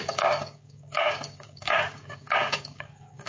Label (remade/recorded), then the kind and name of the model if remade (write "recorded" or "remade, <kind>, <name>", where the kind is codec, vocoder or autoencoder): remade, codec, DAC